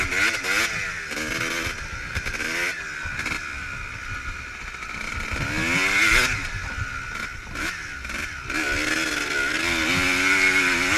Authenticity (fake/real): real